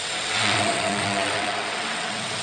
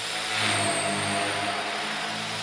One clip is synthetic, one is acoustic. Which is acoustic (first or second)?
second